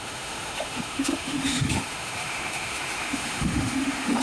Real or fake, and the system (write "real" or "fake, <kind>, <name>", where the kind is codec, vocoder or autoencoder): fake, autoencoder, DAC-VAE